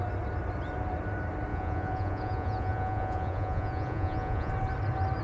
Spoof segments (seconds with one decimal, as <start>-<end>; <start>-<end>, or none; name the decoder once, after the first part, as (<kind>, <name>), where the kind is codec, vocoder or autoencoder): 1.5-4.5 (vocoder, Vocos)